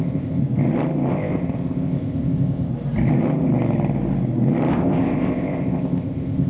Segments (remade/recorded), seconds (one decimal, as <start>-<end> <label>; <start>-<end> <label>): 0.0-0.4 remade; 0.4-1.1 recorded; 1.1-2.7 remade; 2.7-4.7 recorded; 4.7-6.5 remade

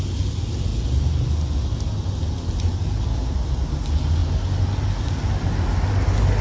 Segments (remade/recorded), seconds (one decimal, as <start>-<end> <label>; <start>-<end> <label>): 0.0-6.4 recorded

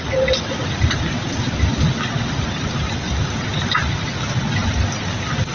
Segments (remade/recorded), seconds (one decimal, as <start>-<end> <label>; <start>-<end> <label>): 0.0-5.5 recorded

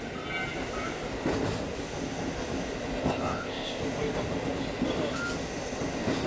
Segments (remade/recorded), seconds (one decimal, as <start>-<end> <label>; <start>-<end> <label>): 0.0-3.0 recorded; 3.0-3.8 remade; 3.8-6.3 recorded

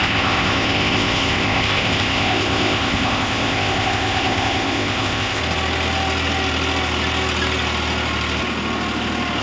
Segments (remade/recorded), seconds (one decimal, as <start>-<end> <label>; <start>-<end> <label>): 0.0-5.4 remade; 5.4-9.4 recorded

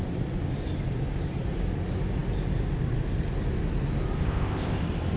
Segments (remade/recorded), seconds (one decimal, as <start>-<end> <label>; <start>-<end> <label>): 0.0-4.2 recorded; 4.2-4.8 remade; 4.8-5.2 recorded